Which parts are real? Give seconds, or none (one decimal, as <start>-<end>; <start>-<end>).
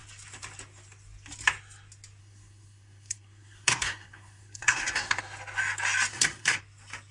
0.0-2.2; 5.2-6.1; 6.6-7.1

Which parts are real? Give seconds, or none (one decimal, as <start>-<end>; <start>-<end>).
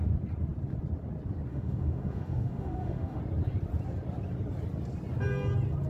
0.0-1.5; 3.2-5.9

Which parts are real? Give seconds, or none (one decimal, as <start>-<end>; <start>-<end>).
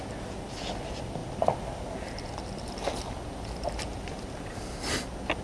0.0-5.4